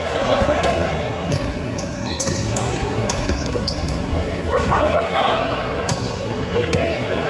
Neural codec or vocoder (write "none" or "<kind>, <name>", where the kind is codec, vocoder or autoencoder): codec, SNAC